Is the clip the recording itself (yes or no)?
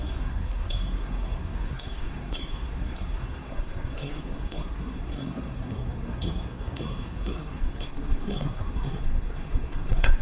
no